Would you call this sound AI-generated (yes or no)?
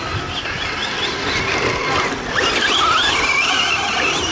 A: no